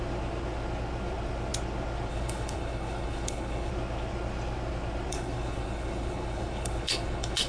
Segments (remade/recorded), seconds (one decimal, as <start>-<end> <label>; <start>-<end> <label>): 0.0-2.1 recorded; 2.1-3.7 remade; 3.7-5.1 recorded; 5.1-7.5 remade

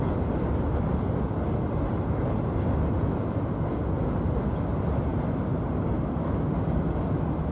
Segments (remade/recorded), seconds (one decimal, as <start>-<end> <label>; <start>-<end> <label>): 0.0-7.5 recorded

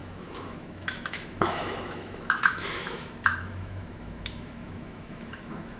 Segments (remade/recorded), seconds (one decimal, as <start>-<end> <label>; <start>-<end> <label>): 0.0-5.8 remade

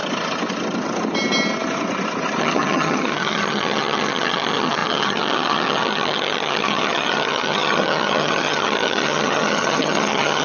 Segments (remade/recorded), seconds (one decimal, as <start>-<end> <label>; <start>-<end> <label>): 0.0-2.4 recorded; 2.4-10.4 remade